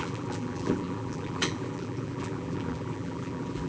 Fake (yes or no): yes